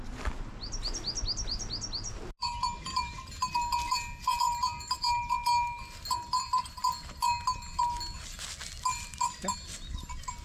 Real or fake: real